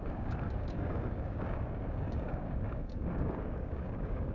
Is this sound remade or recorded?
remade